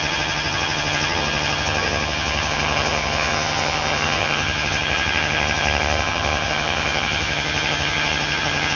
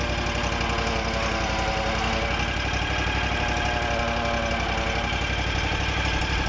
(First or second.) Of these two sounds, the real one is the second